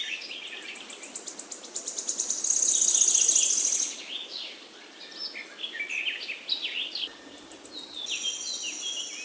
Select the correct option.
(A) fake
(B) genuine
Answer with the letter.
B